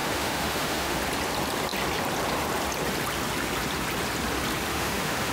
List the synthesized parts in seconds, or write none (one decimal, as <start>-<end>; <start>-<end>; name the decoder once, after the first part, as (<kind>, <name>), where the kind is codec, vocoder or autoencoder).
0.0-1.0 (autoencoder, DAC-VAE); 4.7-5.3